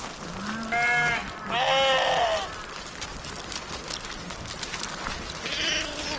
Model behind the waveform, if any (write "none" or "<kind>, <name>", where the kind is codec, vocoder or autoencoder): none